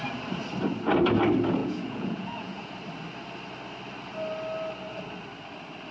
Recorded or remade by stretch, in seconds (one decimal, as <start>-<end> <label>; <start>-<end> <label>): 0.0-1.6 recorded; 1.6-2.7 remade; 2.7-5.9 recorded